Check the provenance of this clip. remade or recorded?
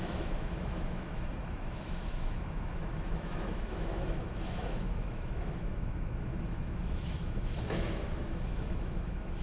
remade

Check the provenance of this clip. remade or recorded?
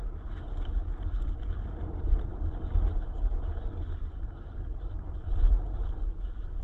recorded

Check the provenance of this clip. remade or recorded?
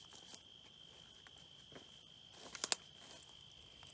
recorded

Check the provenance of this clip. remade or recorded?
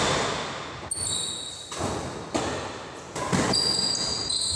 recorded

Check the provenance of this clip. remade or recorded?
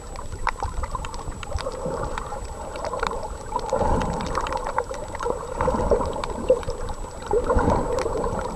remade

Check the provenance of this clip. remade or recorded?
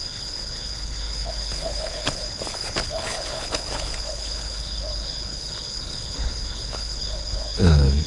remade